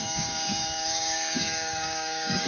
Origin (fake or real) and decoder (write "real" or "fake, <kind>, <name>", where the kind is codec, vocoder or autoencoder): fake, codec, DAC